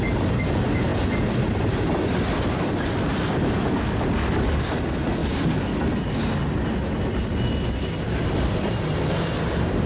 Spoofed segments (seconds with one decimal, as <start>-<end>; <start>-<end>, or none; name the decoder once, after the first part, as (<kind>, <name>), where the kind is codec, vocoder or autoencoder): none